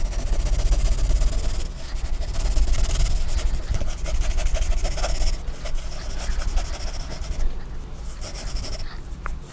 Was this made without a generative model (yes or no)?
yes